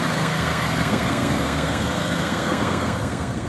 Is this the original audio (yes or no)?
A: no